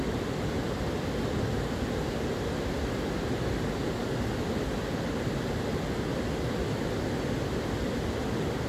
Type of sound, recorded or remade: recorded